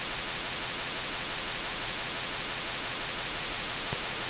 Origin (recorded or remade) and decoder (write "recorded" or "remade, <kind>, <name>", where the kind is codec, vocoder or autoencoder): remade, vocoder, Vocos